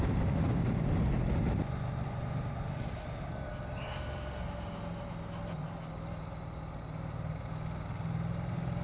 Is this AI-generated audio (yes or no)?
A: no